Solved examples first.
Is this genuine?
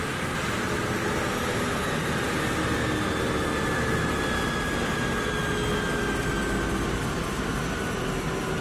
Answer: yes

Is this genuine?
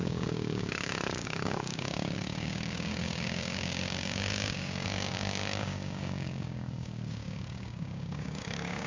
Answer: no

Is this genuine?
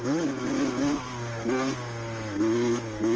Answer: yes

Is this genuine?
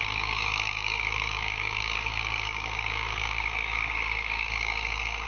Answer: no